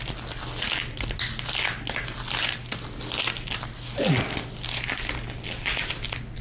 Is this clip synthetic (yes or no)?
no